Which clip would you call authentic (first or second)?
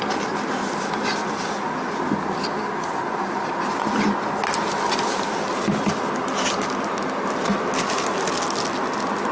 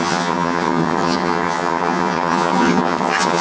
first